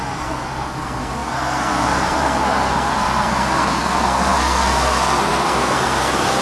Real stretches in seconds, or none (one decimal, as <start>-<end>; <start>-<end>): none

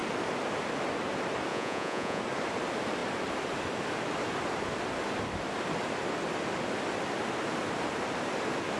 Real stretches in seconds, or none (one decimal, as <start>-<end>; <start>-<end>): 0.0-1.5; 2.2-8.8